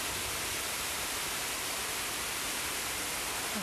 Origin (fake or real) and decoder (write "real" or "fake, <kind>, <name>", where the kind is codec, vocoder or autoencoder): real